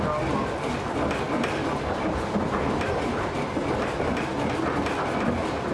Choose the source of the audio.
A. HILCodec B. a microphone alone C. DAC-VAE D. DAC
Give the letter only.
B